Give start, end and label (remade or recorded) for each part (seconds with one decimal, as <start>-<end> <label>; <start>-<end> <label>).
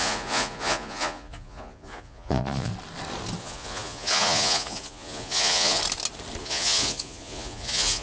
0.0-2.7 remade; 2.7-3.4 recorded; 3.4-5.8 remade; 5.8-6.4 recorded; 6.4-8.0 remade